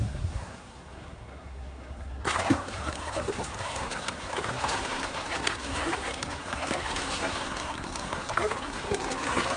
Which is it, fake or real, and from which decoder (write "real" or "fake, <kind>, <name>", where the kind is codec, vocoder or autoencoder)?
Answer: fake, codec, SNAC